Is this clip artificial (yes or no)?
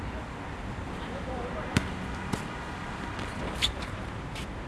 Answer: yes